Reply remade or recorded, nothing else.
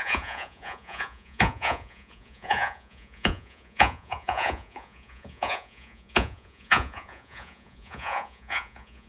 remade